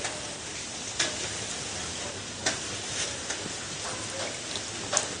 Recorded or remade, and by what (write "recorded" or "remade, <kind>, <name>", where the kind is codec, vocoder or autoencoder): recorded